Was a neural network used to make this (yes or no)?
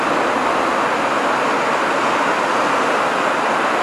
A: no